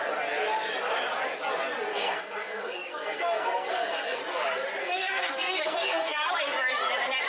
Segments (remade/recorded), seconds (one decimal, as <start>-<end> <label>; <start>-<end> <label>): 0.0-1.9 recorded; 1.9-4.2 remade; 4.2-4.8 recorded; 4.8-6.3 remade; 6.3-7.3 recorded